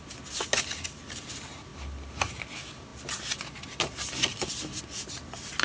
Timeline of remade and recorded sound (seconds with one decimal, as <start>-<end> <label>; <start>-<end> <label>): 0.0-5.6 recorded